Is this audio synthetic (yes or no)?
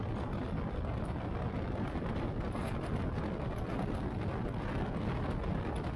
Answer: no